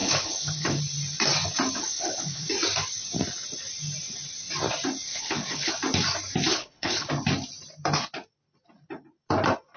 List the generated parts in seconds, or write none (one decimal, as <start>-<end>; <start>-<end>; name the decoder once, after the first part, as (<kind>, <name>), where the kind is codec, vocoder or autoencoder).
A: 0.0-0.8 (codec, HILCodec); 1.8-2.5; 5.1-5.7; 6.5-7.1